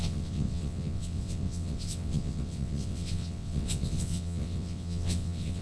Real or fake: fake